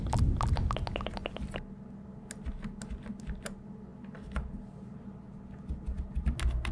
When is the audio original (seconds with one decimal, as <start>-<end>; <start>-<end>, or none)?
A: 0.0-6.7

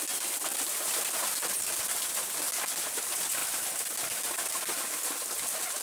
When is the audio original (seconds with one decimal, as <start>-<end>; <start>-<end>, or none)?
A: 0.0-0.5; 2.0-5.8

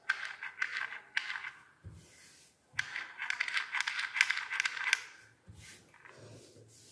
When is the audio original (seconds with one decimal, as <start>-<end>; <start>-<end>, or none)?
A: 0.0-6.9

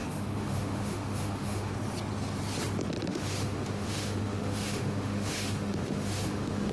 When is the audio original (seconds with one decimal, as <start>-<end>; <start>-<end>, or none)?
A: 1.7-3.1

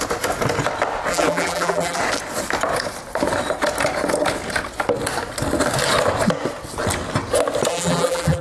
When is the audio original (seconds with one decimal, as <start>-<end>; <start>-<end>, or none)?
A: 0.0-1.1; 2.0-7.7

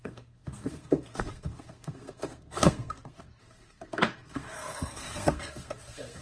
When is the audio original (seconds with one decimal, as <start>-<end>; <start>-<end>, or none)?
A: none

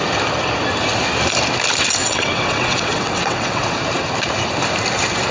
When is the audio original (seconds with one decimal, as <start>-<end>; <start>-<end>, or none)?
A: 0.0-2.0; 3.8-5.3